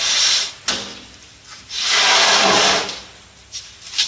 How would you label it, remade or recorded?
recorded